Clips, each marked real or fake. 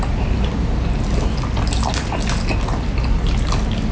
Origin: real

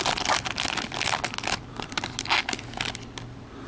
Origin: real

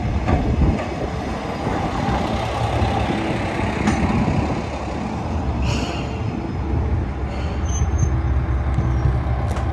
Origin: real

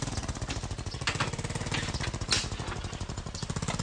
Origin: real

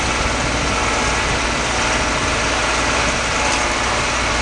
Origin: real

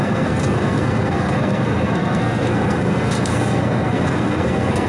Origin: fake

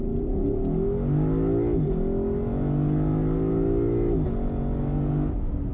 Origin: real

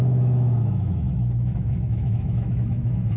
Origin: fake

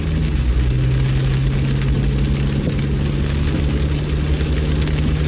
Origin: real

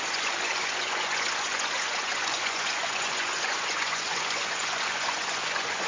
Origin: fake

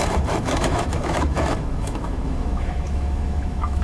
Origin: fake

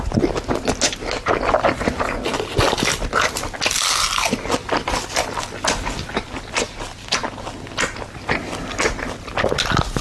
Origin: real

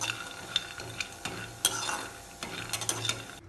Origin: real